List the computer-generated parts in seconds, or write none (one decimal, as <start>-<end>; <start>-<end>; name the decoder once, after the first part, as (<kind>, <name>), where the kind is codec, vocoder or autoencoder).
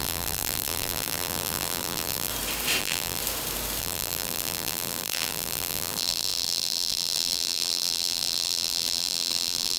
0.0-2.3 (vocoder, BigVGAN v2); 2.8-3.2; 3.8-9.8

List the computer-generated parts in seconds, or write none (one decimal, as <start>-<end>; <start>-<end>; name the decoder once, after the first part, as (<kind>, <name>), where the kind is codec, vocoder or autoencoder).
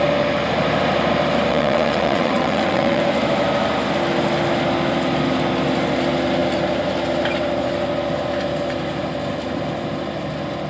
1.5-3.0 (vocoder, WaveNeXt)